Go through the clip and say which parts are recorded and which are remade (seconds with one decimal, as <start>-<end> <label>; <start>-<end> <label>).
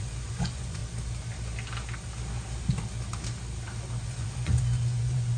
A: 0.0-0.8 remade; 0.8-4.0 recorded; 4.0-5.4 remade